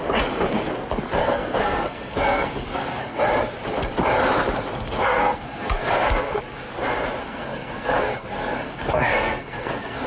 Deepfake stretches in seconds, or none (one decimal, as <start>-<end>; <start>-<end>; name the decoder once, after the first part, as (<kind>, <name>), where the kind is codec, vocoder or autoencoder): 1.2-3.2 (codec, SNAC); 5.0-6.4; 7.2-10.1